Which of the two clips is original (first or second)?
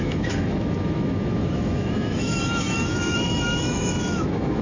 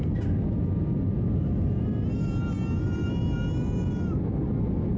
second